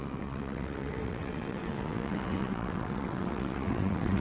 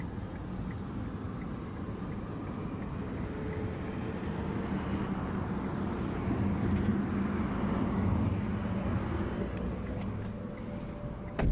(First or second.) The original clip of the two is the second